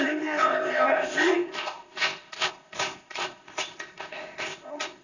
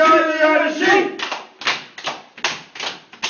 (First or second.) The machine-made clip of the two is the first